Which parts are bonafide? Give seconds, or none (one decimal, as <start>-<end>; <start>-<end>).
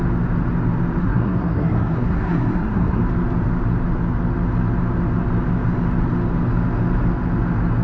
0.0-1.0; 3.0-7.8